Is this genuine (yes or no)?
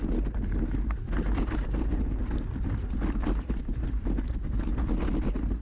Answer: yes